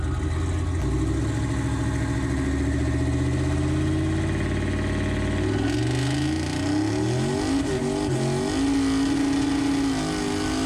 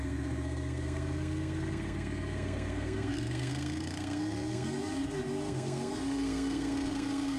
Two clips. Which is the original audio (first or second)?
first